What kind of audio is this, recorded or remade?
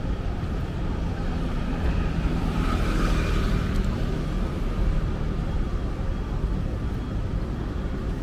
remade